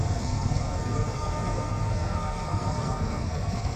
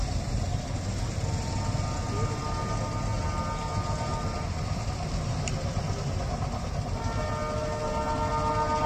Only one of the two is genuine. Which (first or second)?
second